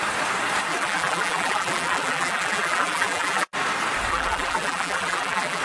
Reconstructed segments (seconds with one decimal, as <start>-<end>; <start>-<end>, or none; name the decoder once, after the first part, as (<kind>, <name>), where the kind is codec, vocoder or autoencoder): 0.7-3.5 (vocoder, BigVGAN v2); 4.1-5.6